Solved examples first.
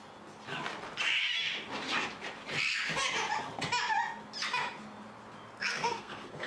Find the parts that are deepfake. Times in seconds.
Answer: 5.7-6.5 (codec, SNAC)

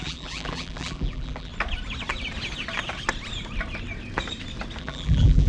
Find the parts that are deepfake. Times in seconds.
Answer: 0.0-1.5 (vocoder, BigVGAN v2); 4.8-5.5

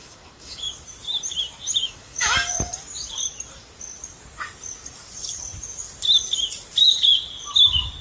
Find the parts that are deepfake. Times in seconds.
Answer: 0.0-0.7 (autoencoder, DAC-VAE); 1.8-2.3